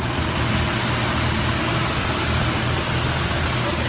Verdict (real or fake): real